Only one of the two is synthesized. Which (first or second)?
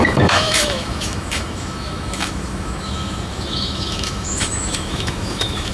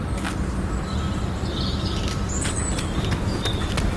first